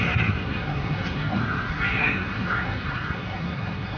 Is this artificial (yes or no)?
yes